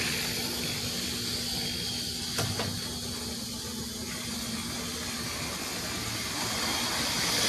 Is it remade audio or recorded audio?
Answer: recorded